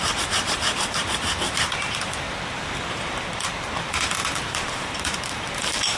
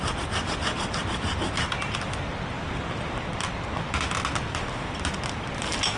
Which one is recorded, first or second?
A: second